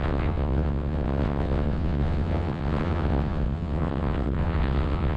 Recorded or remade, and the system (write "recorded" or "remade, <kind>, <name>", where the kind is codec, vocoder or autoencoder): remade, vocoder, WaveNeXt